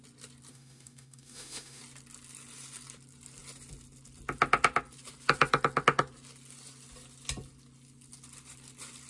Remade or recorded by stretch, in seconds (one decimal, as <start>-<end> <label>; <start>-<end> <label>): 0.0-0.5 recorded; 0.5-1.8 remade; 1.8-9.1 recorded

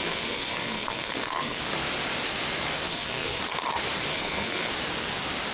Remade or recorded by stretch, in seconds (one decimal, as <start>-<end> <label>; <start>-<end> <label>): 0.0-1.6 remade; 1.6-2.9 recorded; 2.9-3.4 remade; 3.4-4.1 recorded; 4.1-4.7 remade; 4.7-5.5 recorded

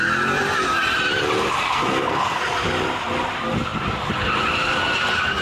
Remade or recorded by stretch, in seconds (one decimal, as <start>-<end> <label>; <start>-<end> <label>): 0.0-1.6 recorded; 1.6-2.4 remade; 2.4-5.4 recorded